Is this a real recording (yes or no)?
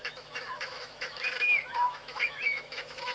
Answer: no